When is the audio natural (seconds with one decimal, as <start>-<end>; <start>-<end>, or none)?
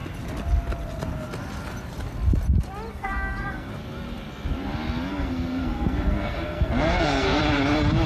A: 0.0-2.9; 3.7-5.1; 7.4-8.1